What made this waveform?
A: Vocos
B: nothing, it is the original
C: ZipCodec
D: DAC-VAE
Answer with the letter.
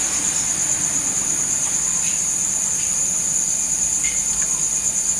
B